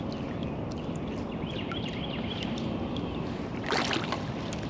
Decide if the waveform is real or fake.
real